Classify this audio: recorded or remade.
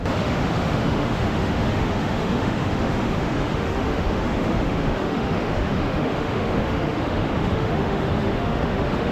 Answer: remade